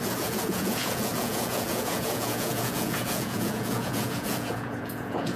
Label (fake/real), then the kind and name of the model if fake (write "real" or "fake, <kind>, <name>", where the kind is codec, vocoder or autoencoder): fake, vocoder, Vocos